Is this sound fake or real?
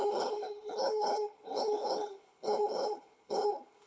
fake